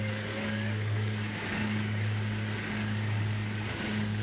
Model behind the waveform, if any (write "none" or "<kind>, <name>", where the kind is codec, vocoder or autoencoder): codec, DAC